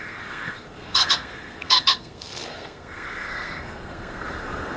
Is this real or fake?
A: fake